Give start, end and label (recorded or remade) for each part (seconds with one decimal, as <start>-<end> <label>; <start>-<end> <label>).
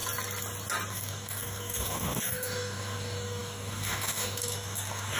0.0-0.9 recorded; 0.9-5.2 remade